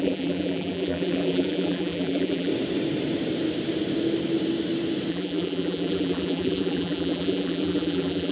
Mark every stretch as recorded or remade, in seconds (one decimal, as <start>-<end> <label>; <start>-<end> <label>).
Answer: 0.0-2.5 remade; 2.5-5.1 recorded; 5.1-8.3 remade